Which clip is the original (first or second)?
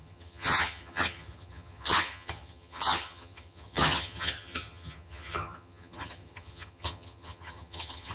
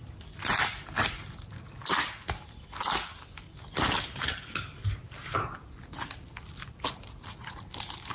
second